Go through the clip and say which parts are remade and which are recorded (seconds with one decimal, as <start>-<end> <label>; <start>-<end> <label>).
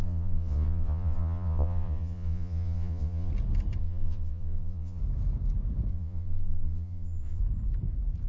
0.0-3.3 remade; 3.3-3.8 recorded; 3.8-5.0 remade; 5.0-5.9 recorded; 5.9-7.4 remade; 7.4-8.3 recorded